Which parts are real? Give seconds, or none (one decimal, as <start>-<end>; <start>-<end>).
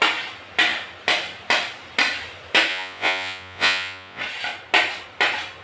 0.0-2.7; 4.2-5.6